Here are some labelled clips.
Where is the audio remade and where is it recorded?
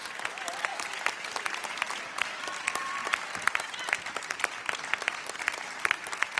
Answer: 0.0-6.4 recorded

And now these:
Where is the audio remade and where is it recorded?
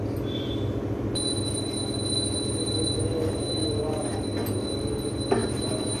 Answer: 0.0-6.0 recorded